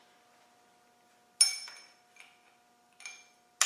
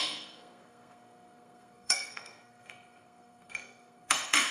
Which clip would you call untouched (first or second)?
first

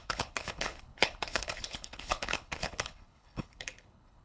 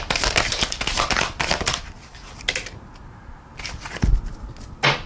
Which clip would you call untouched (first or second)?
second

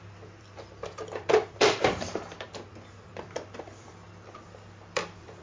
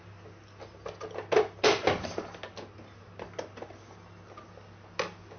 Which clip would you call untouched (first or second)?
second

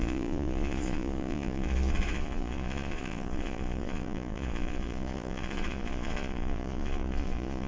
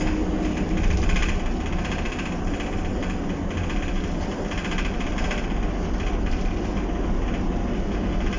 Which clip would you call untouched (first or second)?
second